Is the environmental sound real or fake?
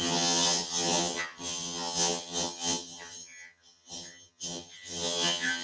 fake